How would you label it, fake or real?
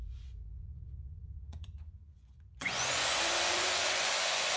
fake